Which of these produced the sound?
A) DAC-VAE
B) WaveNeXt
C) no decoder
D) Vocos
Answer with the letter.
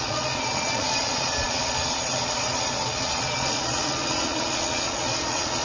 D